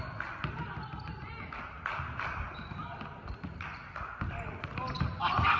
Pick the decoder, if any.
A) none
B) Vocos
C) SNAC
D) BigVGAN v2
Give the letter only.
A